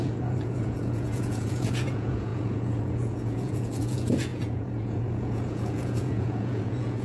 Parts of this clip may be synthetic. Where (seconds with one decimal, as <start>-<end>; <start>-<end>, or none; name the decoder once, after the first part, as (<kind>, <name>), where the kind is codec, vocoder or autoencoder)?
0.0-7.0 (vocoder, Vocos)